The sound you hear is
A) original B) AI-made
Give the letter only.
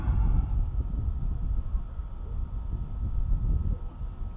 A